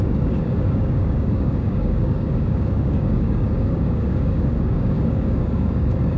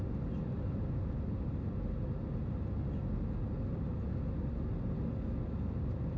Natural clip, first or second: second